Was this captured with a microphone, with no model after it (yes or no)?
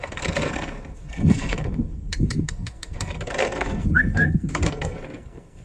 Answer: no